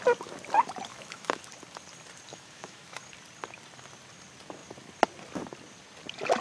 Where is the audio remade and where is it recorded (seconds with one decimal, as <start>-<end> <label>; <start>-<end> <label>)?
0.0-0.9 recorded; 0.9-1.4 remade; 1.4-2.3 recorded; 2.3-3.0 remade; 3.0-6.4 recorded